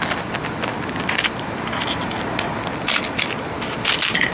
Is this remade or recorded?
recorded